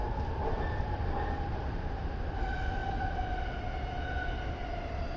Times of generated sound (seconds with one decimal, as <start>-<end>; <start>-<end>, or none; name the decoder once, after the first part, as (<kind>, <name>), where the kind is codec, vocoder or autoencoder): 0.7-2.8 (vocoder, BigVGAN v2); 4.6-5.2